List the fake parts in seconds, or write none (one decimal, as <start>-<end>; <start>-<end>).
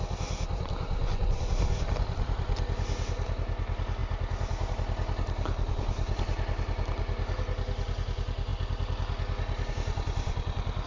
1.0-1.5